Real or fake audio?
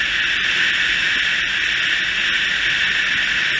real